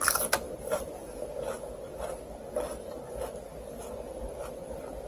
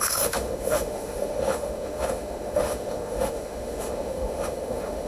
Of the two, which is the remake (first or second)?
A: second